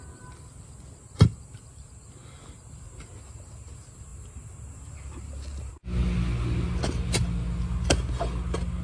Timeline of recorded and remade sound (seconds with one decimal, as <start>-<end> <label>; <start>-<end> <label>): 0.0-8.8 recorded